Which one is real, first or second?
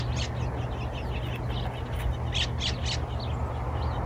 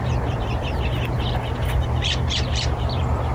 first